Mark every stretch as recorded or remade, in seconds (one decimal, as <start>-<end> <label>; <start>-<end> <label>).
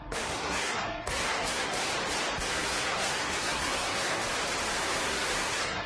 0.0-1.9 remade; 1.9-2.4 recorded; 2.4-4.2 remade; 4.2-4.7 recorded; 4.7-5.9 remade